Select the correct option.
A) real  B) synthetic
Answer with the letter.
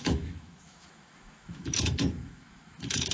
B